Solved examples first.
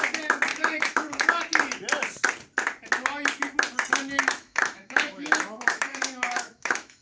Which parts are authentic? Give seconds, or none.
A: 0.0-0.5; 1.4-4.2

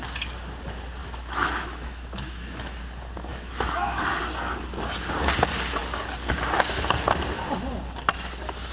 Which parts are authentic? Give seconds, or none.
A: 0.0-1.0; 2.8-3.3; 4.2-8.7

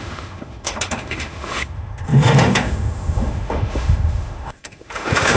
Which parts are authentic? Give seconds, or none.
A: none

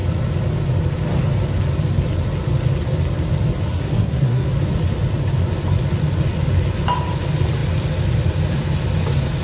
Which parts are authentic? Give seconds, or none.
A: 0.0-3.7; 4.5-9.4

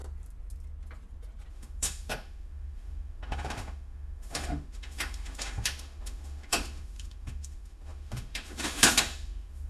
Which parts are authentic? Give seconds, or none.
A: 0.0-1.5

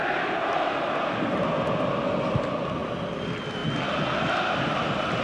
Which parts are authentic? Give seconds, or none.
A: 0.0-5.2

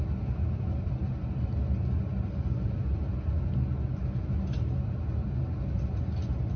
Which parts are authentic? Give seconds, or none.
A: 0.0-6.6